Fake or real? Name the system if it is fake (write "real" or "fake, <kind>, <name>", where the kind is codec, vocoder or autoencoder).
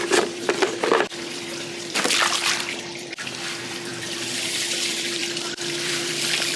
fake, vocoder, BigVGAN v2